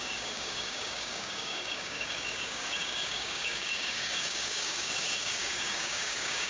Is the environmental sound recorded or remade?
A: remade